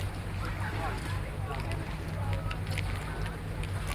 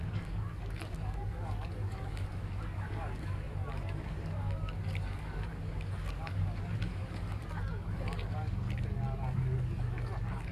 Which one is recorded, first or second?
first